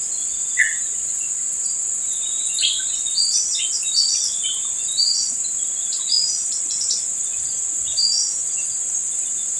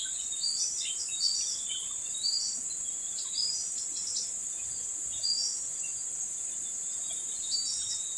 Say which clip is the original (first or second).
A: first